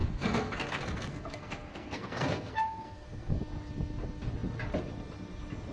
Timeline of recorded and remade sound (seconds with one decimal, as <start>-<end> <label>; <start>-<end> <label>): 0.0-3.4 remade; 3.4-5.7 recorded